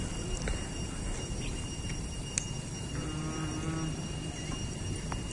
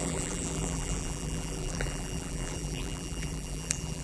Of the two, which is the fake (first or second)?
second